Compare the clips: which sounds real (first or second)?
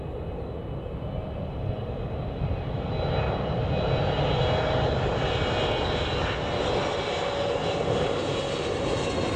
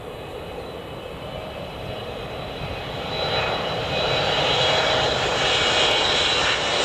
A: first